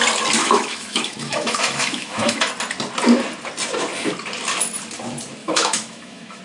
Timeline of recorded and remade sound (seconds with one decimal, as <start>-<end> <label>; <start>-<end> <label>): 0.0-0.4 recorded; 0.4-2.5 remade; 2.5-5.4 recorded; 5.4-6.4 remade